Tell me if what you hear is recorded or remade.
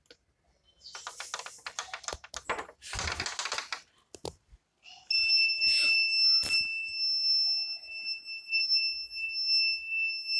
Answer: recorded